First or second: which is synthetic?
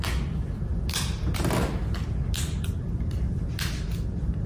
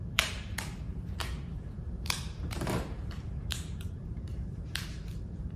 second